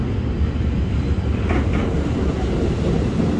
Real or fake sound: real